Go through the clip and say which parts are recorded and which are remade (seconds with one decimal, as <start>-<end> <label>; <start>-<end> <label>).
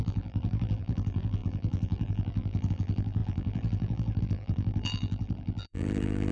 0.0-6.3 remade